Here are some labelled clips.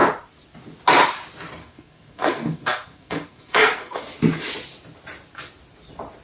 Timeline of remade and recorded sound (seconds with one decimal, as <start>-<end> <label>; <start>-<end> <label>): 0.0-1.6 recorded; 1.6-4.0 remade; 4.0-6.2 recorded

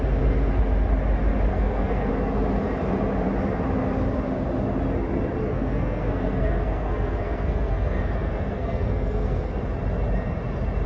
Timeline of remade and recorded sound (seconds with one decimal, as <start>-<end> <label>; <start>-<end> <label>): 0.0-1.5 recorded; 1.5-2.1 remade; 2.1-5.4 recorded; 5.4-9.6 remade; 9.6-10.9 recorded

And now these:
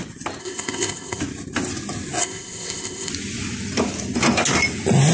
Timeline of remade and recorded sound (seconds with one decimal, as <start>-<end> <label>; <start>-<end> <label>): 0.0-0.4 recorded; 0.4-1.2 remade; 1.2-2.2 recorded; 2.2-3.1 remade; 3.1-5.1 recorded

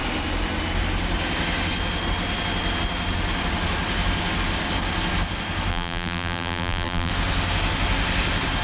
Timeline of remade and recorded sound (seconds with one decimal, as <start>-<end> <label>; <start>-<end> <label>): 0.0-5.7 recorded; 5.7-7.1 remade; 7.1-8.6 recorded